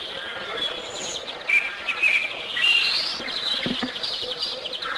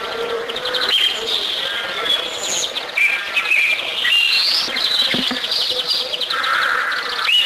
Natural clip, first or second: second